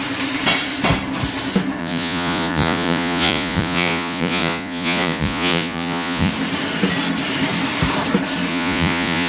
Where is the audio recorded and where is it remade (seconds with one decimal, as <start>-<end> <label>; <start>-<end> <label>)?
0.0-1.8 recorded; 1.8-6.3 remade; 6.3-8.5 recorded; 8.5-9.3 remade

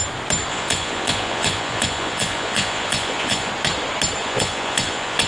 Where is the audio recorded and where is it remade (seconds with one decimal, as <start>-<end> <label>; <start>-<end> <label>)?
0.0-0.5 recorded; 0.5-3.5 remade; 3.5-4.2 recorded; 4.2-5.3 remade

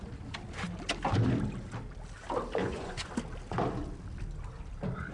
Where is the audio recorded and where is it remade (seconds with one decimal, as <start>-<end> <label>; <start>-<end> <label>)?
0.0-2.6 recorded; 2.6-3.1 remade; 3.1-5.1 recorded

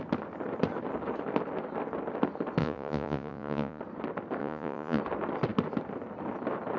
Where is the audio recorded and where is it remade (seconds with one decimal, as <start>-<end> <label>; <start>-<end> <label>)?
0.0-2.6 recorded; 2.6-3.8 remade; 3.8-4.4 recorded; 4.4-5.0 remade; 5.0-6.8 recorded

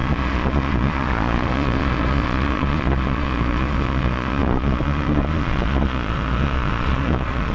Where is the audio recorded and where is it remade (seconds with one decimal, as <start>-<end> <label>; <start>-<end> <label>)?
0.0-7.5 remade